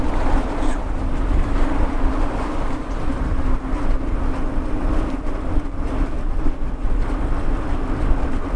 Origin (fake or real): real